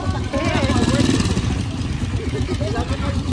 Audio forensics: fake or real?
real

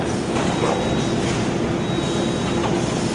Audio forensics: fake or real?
real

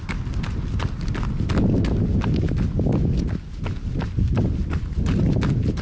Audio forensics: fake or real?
real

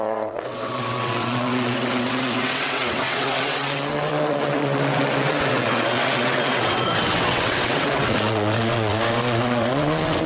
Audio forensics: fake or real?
fake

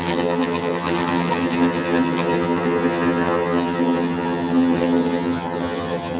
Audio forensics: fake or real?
fake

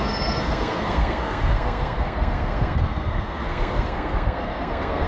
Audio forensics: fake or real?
fake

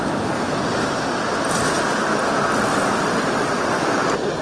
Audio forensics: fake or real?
real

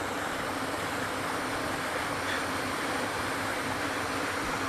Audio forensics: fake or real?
real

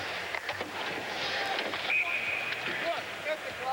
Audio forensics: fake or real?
real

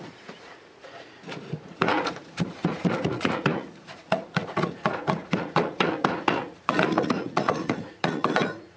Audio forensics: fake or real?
fake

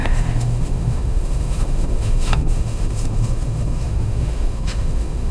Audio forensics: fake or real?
fake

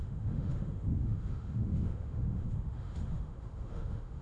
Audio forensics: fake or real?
fake